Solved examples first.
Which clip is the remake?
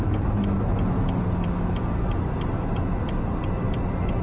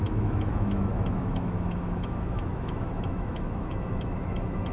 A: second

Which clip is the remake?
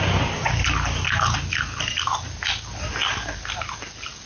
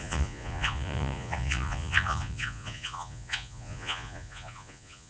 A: second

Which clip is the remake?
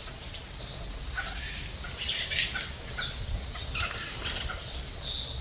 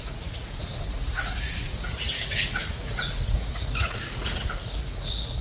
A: second